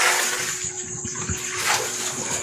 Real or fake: fake